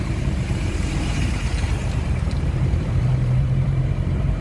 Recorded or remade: remade